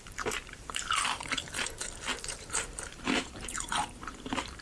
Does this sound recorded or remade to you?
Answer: remade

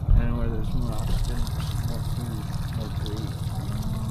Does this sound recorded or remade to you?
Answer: recorded